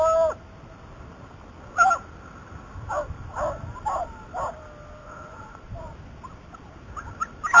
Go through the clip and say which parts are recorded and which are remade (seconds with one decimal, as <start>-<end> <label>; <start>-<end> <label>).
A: 0.0-5.0 recorded; 5.0-5.7 remade; 5.7-7.6 recorded